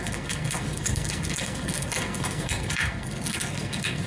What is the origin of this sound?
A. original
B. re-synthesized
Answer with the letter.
B